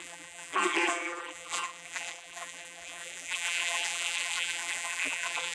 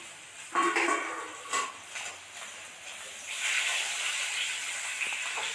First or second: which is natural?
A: second